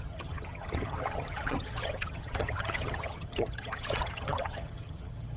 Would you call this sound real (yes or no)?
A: no